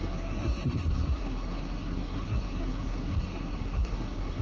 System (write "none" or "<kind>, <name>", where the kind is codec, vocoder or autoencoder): codec, SNAC